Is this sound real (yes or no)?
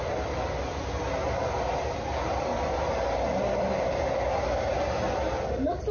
yes